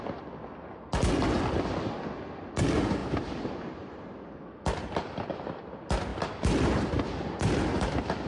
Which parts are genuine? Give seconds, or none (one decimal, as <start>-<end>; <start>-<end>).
0.0-3.0; 3.9-4.8; 5.4-6.1; 6.9-8.3

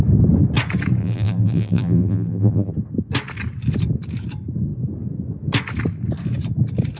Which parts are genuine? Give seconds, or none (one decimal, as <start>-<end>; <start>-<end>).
0.0-1.0; 2.7-7.0

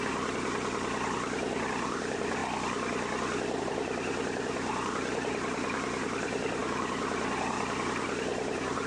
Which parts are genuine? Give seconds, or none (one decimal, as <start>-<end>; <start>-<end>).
2.4-3.6